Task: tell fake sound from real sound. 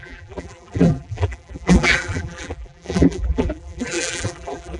fake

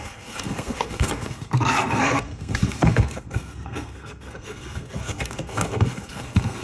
fake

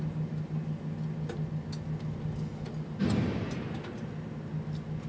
real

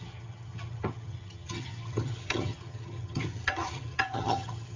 fake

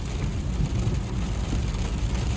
fake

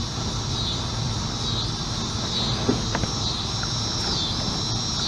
real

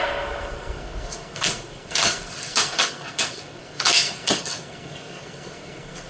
fake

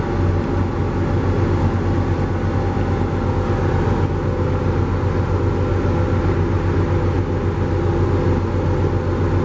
real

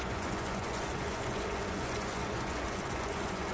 fake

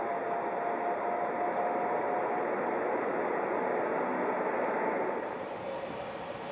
real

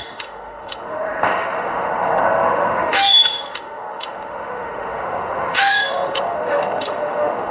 fake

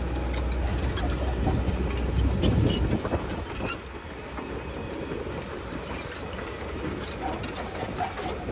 real